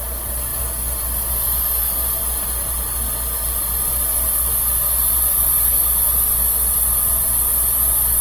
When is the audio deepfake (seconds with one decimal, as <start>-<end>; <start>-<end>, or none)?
none